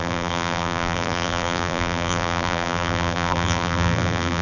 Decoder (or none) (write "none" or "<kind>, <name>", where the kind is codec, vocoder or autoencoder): vocoder, BigVGAN v2